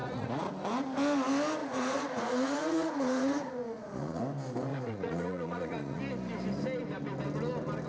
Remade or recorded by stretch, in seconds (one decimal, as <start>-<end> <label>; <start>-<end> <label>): 0.0-0.5 remade; 0.5-1.6 recorded; 1.6-4.2 remade; 4.2-4.7 recorded; 4.7-6.0 remade; 6.0-7.9 recorded